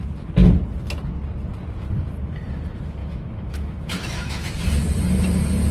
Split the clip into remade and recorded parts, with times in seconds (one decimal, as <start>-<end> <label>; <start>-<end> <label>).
0.0-3.0 recorded; 3.0-4.5 remade; 4.5-5.7 recorded